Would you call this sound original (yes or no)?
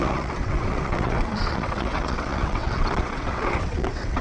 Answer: no